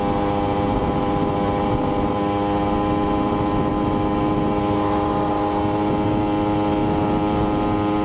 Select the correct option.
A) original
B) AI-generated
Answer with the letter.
A